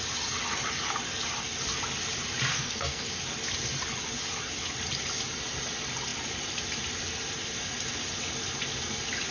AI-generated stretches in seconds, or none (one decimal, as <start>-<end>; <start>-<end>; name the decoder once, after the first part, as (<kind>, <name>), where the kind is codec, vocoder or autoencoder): 2.5-3.1 (codec, SNAC)

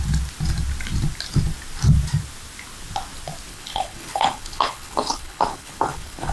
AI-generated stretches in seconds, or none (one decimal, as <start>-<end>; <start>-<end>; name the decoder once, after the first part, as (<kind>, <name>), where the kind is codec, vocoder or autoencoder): 3.5-6.3 (codec, HILCodec)

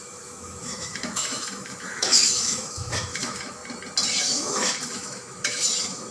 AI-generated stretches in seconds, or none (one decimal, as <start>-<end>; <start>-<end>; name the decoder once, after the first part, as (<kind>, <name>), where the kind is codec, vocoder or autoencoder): 0.0-3.6 (autoencoder, DAC-VAE); 4.2-6.1

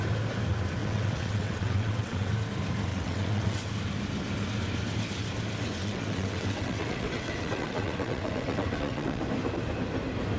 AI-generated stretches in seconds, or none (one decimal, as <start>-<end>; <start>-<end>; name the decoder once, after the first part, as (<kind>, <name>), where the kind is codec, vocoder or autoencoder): 0.8-2.3 (vocoder, WaveNeXt); 2.9-3.6; 5.8-9.2

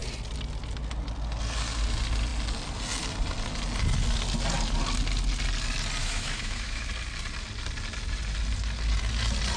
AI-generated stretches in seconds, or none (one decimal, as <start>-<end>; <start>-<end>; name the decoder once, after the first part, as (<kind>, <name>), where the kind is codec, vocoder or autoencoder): 6.0-6.9 (autoencoder, DAC-VAE)

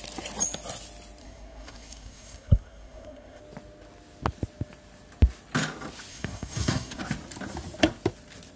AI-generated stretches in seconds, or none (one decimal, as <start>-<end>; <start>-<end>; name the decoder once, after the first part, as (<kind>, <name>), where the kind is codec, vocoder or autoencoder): 1.2-3.4 (codec, SNAC); 6.1-7.0

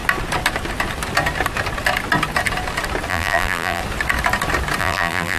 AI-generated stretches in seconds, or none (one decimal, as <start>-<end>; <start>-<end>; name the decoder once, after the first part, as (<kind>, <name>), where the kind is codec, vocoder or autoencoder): 3.1-3.8 (vocoder, BigVGAN v2); 4.8-5.4

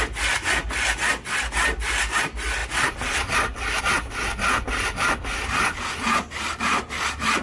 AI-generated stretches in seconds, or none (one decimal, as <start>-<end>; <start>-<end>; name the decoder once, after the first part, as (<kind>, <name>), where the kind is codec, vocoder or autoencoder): none